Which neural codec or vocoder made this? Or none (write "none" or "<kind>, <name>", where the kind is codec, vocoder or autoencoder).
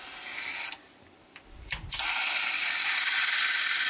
none